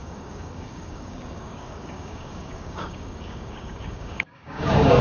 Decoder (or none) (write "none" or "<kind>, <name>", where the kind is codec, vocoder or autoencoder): codec, DAC